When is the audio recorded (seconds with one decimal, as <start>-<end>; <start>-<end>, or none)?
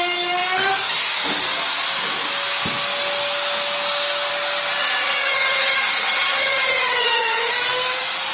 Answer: 0.0-4.8; 7.5-8.3